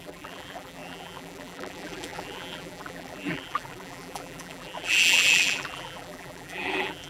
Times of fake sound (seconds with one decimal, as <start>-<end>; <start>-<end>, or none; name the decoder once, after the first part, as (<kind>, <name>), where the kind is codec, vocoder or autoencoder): 0.0-7.1 (vocoder, BigVGAN v2)

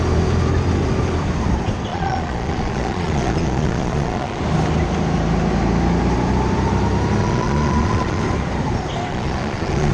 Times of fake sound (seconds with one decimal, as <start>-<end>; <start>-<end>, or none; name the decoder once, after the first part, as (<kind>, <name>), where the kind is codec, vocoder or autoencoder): 1.9-4.4 (vocoder, Vocos); 7.2-8.2; 9.1-9.9

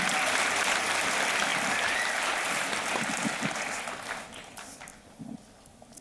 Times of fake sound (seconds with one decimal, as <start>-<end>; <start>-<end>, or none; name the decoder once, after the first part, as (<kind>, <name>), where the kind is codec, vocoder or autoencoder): 1.5-3.7 (vocoder, BigVGAN v2); 4.9-5.5

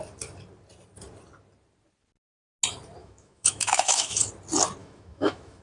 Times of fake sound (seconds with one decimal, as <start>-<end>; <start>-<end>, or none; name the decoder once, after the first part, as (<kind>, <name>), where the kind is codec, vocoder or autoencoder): 3.0-4.3 (autoencoder, DAC-VAE); 4.8-5.6

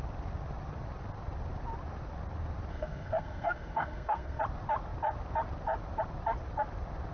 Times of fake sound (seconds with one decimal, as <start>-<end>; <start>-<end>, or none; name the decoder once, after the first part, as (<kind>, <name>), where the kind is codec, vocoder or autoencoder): 2.7-4.4 (codec, SNAC)

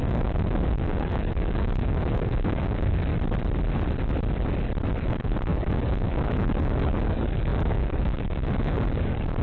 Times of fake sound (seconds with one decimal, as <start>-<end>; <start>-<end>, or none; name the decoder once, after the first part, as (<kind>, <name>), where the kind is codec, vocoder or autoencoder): 0.0-3.1 (codec, DAC); 5.1-9.4

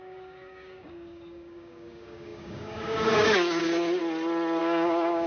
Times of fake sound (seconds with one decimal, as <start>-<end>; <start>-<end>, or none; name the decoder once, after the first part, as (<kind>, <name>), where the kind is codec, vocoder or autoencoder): 0.0-4.0 (codec, DAC); 4.6-5.3